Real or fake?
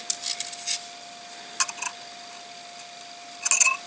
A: real